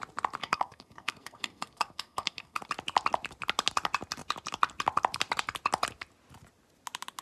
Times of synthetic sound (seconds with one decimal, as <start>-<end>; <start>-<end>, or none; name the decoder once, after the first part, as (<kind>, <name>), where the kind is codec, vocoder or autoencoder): 0.4-2.6 (codec, SNAC)